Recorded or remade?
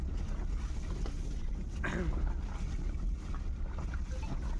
recorded